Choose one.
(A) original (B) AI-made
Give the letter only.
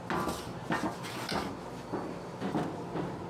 A